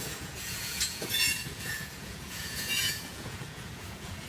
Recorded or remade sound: remade